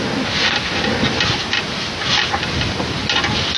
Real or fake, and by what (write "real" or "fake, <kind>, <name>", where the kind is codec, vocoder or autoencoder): real